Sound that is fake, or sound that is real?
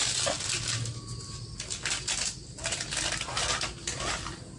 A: real